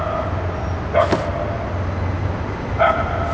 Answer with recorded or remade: recorded